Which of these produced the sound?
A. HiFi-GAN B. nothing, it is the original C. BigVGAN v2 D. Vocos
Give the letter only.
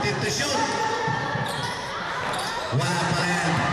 C